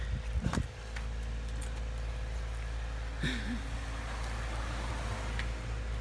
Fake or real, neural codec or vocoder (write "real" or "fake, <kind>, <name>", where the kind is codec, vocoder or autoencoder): real